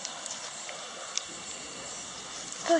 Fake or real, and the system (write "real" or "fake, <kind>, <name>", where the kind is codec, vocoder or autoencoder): real